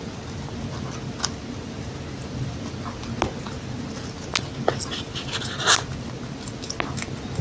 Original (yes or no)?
yes